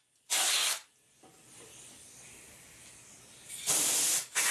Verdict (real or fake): fake